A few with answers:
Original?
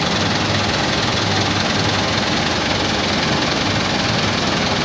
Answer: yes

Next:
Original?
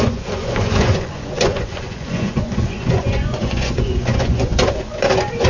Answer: no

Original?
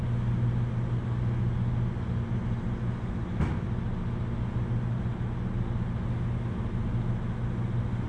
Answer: yes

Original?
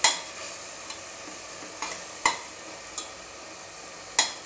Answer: yes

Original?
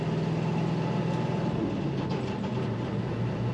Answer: yes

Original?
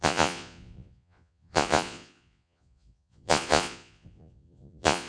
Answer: no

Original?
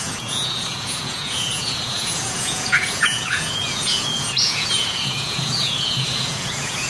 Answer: no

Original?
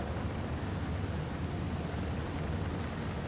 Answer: yes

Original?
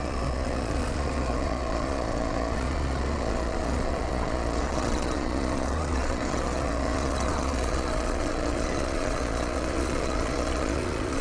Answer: no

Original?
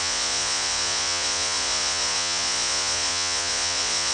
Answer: no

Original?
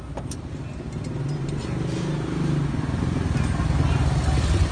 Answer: yes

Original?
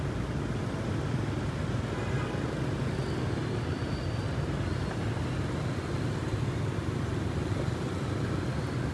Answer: yes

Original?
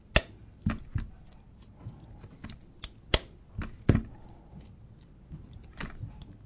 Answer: yes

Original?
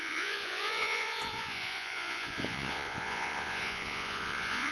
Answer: no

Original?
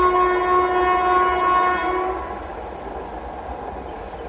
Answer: yes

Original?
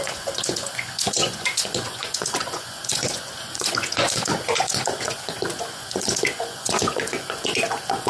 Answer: no